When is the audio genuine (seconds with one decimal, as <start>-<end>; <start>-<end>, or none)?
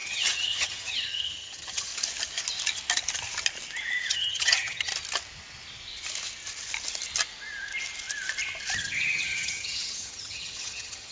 1.9-4.1; 4.9-8.8